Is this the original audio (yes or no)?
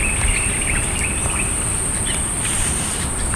yes